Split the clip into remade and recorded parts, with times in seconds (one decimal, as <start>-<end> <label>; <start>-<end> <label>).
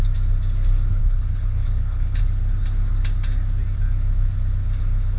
0.0-1.0 recorded; 1.0-2.2 remade; 2.2-5.2 recorded